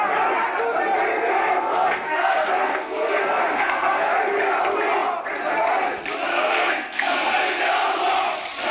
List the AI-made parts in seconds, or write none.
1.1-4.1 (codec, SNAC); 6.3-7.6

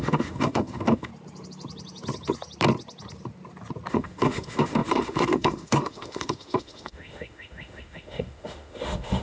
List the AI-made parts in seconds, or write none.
0.0-1.1 (autoencoder, DAC-VAE); 3.9-9.2

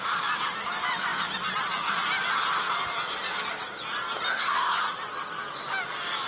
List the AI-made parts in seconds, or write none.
4.3-4.8 (codec, SNAC)

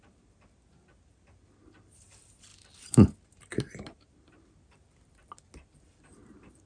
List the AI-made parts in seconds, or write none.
none

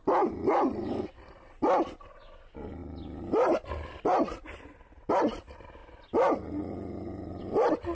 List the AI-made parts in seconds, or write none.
none